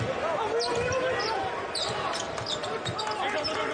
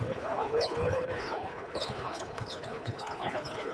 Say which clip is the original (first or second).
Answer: first